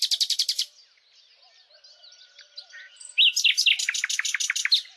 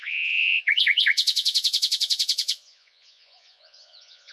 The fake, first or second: second